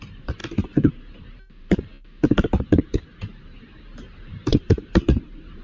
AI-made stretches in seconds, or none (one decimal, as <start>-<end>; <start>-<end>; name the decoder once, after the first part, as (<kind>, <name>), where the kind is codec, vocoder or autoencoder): 0.0-0.4 (vocoder, BigVGAN v2); 0.9-1.9; 3.3-5.6